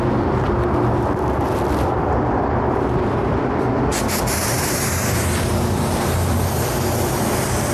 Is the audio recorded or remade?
remade